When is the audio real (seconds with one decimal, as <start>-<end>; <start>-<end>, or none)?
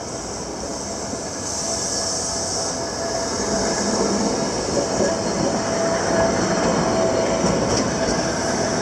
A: 0.0-8.8